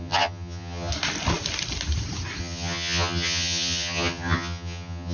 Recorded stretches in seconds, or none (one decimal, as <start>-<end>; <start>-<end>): 0.9-2.4